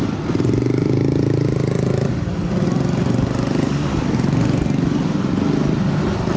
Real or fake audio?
real